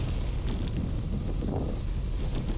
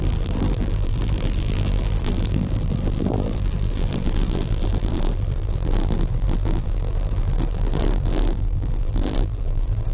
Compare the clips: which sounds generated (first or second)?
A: second